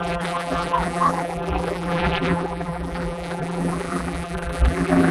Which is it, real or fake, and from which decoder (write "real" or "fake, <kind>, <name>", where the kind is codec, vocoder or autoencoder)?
fake, vocoder, BigVGAN v2